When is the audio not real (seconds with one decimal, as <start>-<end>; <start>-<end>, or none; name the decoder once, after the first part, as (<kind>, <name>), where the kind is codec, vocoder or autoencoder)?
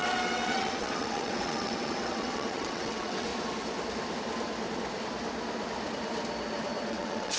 0.0-3.3 (vocoder, WaveNeXt); 6.9-7.4